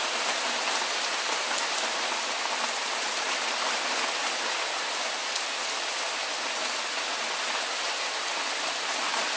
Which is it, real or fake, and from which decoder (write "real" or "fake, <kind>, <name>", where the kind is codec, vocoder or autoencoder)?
real